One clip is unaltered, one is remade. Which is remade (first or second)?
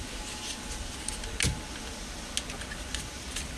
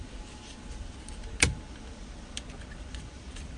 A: second